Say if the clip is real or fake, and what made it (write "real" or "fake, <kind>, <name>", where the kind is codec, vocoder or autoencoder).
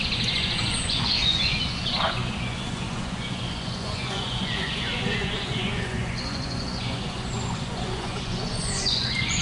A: fake, vocoder, Vocos